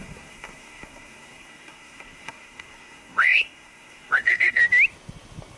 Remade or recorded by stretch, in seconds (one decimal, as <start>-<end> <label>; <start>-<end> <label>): 0.0-4.6 remade; 4.6-5.6 recorded